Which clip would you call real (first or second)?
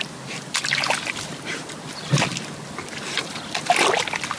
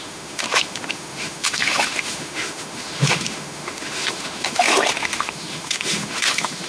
first